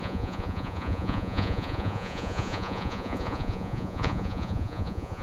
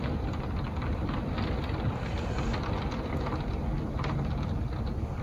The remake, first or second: first